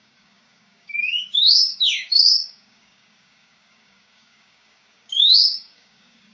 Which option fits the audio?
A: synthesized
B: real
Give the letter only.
A